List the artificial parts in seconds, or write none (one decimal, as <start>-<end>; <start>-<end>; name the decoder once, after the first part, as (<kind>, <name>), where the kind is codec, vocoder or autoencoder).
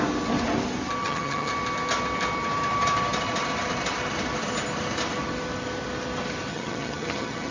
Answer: 1.0-1.5 (vocoder, HiFi-GAN); 6.5-7.5